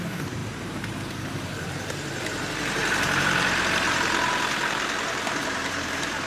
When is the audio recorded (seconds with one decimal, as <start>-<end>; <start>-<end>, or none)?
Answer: none